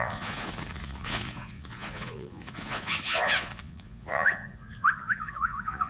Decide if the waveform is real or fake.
fake